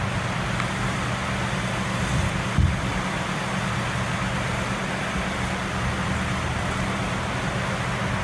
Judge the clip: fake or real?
real